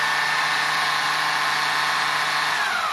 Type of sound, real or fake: real